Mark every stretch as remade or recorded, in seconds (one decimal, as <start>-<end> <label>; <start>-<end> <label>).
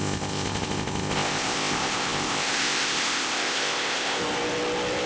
0.0-4.2 remade; 4.2-5.1 recorded